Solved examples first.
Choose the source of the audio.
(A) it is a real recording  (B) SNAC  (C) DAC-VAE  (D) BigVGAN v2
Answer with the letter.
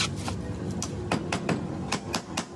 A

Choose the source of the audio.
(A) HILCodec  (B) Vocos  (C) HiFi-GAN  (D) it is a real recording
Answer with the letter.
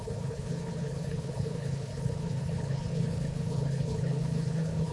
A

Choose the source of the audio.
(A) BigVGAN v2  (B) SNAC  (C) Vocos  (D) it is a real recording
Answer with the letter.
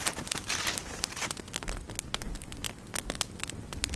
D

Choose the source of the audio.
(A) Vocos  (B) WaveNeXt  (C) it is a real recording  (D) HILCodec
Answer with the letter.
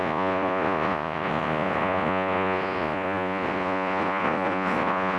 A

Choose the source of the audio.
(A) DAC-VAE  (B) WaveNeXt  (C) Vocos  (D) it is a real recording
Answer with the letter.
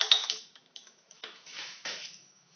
A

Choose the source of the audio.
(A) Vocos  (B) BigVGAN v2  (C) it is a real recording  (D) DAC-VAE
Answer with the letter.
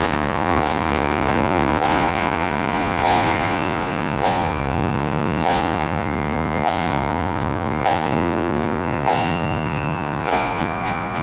A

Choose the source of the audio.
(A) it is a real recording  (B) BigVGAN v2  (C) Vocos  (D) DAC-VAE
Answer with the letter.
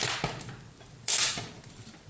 B